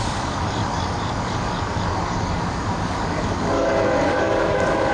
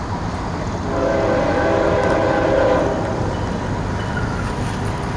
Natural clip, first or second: second